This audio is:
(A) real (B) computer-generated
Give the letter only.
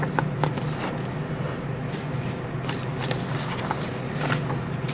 A